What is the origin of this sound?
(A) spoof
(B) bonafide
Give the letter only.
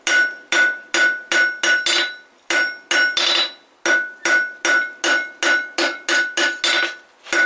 B